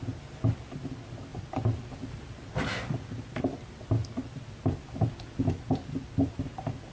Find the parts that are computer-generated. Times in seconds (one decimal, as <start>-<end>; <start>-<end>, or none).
none